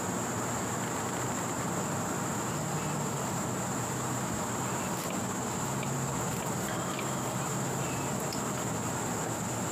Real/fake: real